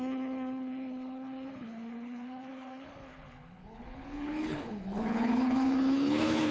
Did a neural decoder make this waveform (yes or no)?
yes